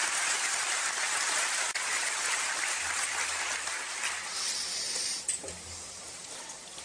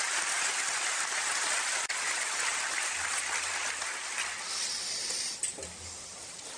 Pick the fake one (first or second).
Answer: second